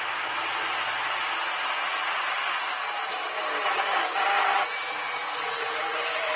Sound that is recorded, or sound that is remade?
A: recorded